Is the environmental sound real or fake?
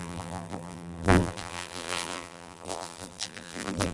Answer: fake